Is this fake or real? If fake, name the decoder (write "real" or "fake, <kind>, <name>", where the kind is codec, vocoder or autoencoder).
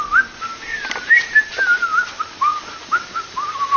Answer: real